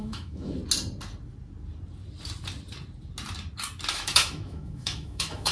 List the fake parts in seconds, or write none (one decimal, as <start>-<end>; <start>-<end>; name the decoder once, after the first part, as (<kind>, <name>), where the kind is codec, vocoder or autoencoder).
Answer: 0.0-0.6 (autoencoder, DAC-VAE); 3.9-5.5

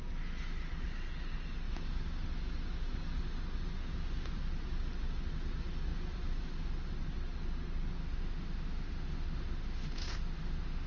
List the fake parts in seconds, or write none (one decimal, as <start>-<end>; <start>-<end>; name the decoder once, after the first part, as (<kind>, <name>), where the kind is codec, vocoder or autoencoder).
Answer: 8.0-10.9 (autoencoder, DAC-VAE)

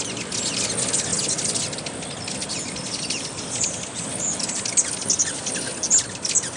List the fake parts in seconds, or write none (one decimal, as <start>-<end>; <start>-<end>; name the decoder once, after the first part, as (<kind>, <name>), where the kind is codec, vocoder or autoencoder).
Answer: none